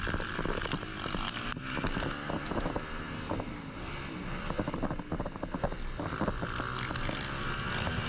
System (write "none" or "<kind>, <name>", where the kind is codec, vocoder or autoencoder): none